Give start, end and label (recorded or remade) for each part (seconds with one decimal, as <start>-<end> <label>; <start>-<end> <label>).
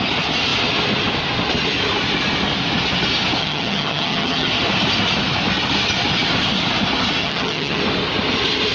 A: 0.0-3.4 recorded; 3.4-4.5 remade; 4.5-7.2 recorded; 7.2-7.8 remade; 7.8-8.7 recorded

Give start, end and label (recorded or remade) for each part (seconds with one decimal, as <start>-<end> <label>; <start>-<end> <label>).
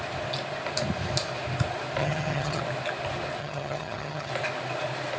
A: 0.0-2.0 recorded; 2.0-2.6 remade; 2.6-3.4 recorded; 3.4-4.3 remade; 4.3-5.2 recorded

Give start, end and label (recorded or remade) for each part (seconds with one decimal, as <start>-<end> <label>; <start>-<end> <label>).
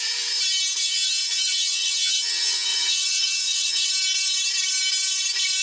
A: 0.0-0.8 recorded; 0.8-3.9 remade; 3.9-5.6 recorded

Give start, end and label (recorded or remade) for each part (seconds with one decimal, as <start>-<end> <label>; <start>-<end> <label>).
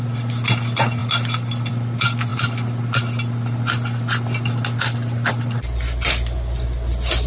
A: 0.0-7.3 recorded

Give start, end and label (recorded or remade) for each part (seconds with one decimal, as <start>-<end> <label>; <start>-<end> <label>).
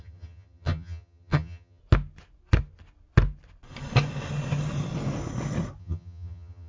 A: 0.0-1.8 remade; 1.8-5.8 recorded; 5.8-6.7 remade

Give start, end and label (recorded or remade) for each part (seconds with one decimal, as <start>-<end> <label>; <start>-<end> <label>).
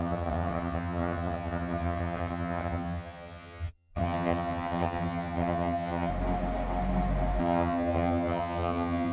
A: 0.0-6.1 remade; 6.1-7.4 recorded; 7.4-9.1 remade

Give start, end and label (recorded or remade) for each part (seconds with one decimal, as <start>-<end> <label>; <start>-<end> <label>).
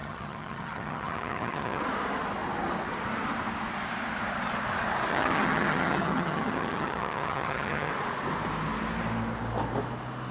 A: 0.0-1.8 remade; 1.8-5.1 recorded; 5.1-7.9 remade; 7.9-10.3 recorded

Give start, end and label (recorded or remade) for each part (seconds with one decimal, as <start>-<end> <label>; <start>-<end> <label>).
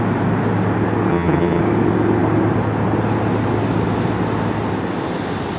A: 0.0-1.1 recorded; 1.1-1.6 remade; 1.6-5.6 recorded